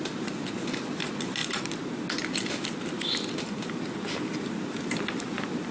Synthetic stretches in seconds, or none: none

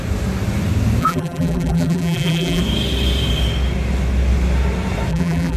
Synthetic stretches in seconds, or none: 1.0-2.6; 5.1-5.6

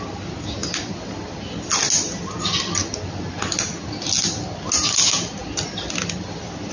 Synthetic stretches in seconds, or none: none